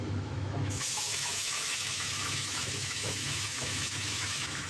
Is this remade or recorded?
remade